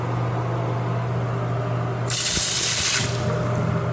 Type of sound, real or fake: real